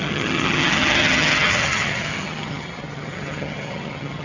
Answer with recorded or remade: remade